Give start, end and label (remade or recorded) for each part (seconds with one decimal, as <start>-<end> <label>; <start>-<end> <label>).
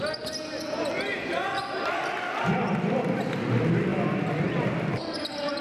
0.0-1.1 recorded; 1.1-3.2 remade; 3.2-3.9 recorded; 3.9-5.0 remade; 5.0-5.6 recorded